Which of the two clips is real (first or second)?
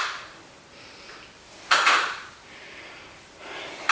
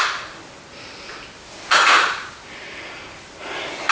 second